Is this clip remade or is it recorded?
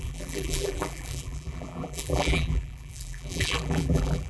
remade